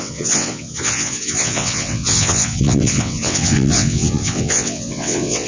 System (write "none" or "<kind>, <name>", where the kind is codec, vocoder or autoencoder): vocoder, WaveNeXt